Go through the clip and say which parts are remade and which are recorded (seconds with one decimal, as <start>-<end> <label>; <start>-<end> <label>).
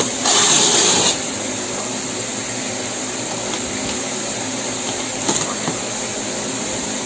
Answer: 0.0-0.4 recorded; 0.4-1.3 remade; 1.3-7.1 recorded